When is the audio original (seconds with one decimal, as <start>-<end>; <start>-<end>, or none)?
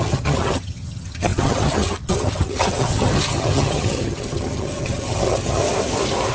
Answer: 5.6-6.3